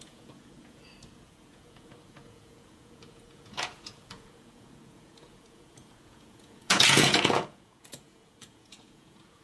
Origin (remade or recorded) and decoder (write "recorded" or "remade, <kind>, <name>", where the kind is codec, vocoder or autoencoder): remade, vocoder, Vocos